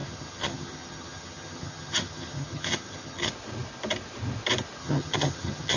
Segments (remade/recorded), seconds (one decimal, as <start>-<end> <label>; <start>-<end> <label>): 0.0-3.3 remade; 3.3-4.8 recorded; 4.8-5.8 remade